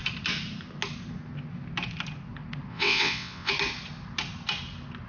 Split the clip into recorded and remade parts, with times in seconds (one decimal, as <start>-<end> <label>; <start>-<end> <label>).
0.0-2.7 recorded; 2.7-3.5 remade; 3.5-5.1 recorded